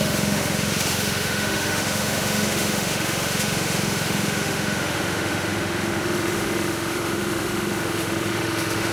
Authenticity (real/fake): fake